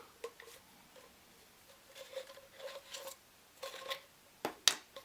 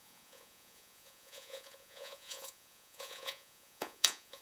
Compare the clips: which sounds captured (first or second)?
first